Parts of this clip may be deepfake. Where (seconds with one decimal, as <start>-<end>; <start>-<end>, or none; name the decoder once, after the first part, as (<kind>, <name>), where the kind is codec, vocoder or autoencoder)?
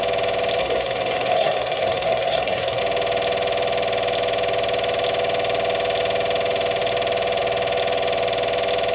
0.6-2.8 (codec, SNAC)